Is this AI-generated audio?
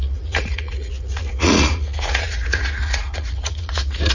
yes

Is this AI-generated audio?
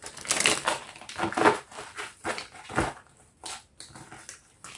no